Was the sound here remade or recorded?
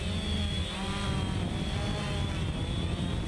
recorded